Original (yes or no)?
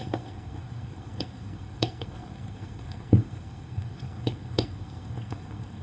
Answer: no